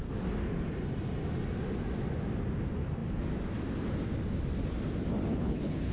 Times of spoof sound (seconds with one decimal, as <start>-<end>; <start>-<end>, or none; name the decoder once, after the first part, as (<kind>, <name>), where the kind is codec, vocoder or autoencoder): 5.3-5.9 (codec, HILCodec)